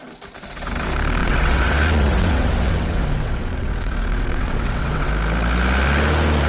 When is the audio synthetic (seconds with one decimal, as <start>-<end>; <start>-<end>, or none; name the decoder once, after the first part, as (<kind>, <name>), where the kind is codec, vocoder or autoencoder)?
1.2-5.1 (vocoder, WaveNeXt)